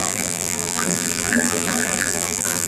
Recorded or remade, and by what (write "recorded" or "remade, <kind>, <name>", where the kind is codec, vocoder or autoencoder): remade, vocoder, BigVGAN v2